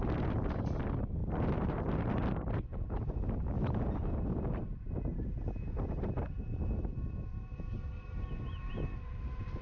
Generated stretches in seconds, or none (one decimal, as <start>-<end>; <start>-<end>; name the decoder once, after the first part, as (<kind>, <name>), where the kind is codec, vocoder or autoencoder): 1.2-2.5 (vocoder, BigVGAN v2)